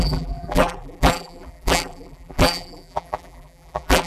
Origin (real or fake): fake